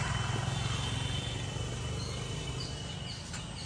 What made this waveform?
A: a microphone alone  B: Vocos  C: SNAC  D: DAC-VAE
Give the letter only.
A